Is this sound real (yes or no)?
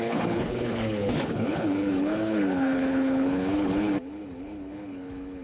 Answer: no